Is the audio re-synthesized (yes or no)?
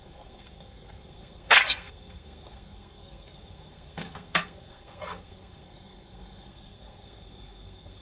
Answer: yes